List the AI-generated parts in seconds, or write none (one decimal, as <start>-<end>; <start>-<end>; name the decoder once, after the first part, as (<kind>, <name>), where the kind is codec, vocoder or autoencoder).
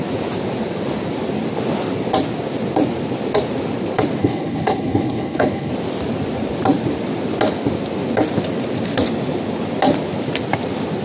4.2-5.7 (codec, HILCodec)